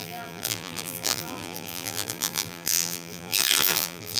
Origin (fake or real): fake